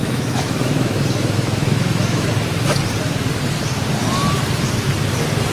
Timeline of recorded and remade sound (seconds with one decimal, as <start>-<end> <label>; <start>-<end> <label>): 0.0-2.3 remade; 2.3-5.5 recorded